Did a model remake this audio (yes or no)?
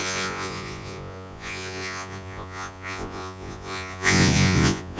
yes